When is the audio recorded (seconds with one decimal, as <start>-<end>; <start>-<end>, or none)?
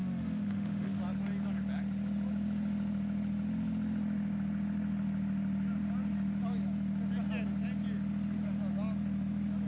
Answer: 1.0-9.7